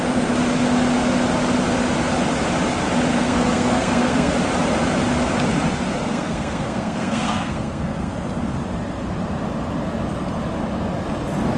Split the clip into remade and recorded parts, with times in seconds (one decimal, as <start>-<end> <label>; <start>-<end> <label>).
0.0-3.1 recorded; 3.1-4.3 remade; 4.3-6.1 recorded; 6.1-8.1 remade; 8.1-11.6 recorded